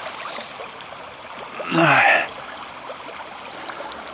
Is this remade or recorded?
recorded